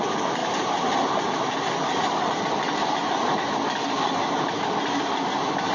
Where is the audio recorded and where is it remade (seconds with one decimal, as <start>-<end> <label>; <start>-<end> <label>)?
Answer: 0.0-5.7 recorded